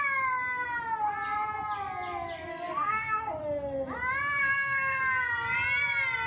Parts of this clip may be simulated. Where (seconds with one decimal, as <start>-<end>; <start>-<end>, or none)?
2.5-3.3; 4.4-5.0